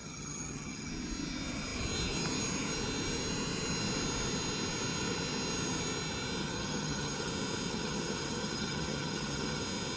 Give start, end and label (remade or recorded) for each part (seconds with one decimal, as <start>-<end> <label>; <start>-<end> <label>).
0.0-0.9 remade; 0.9-6.4 recorded; 6.4-7.3 remade; 7.3-7.7 recorded; 7.7-9.6 remade; 9.6-10.0 recorded